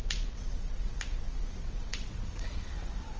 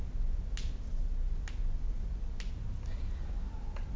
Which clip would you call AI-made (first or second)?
first